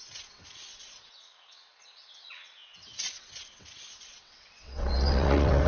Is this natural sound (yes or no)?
no